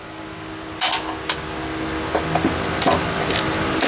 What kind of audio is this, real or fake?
real